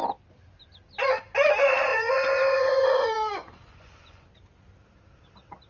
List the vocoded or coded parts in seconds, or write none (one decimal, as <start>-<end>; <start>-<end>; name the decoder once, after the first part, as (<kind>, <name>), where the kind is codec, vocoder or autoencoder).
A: 1.9-4.3 (vocoder, Vocos)